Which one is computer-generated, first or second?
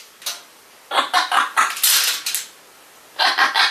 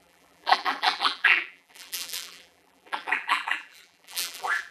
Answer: second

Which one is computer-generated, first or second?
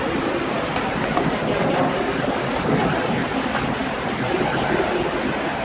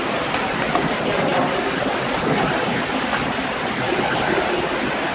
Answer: second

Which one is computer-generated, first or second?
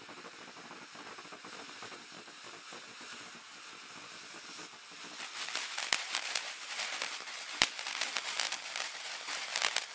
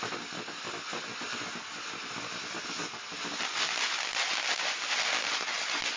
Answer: first